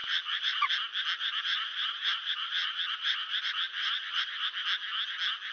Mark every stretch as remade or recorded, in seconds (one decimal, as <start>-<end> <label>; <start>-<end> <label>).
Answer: 0.0-0.7 remade; 0.7-1.2 recorded; 1.2-4.5 remade; 4.5-5.5 recorded